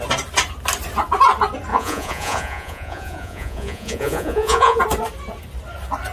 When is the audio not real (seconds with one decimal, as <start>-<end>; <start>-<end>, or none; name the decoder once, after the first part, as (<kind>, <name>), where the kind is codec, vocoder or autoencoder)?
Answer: 1.7-4.8 (vocoder, Vocos)